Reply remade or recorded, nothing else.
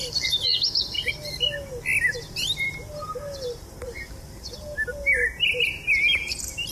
recorded